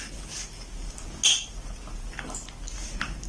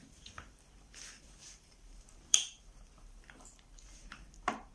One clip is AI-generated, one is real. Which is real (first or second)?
first